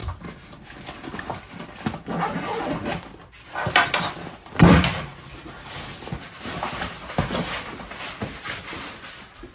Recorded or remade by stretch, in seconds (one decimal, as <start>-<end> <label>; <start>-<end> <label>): 0.0-9.5 recorded